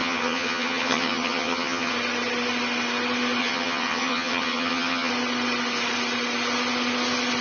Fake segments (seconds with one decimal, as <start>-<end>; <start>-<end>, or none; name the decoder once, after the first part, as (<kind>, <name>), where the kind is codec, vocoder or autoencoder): 0.0-1.9 (vocoder, HiFi-GAN); 3.4-5.1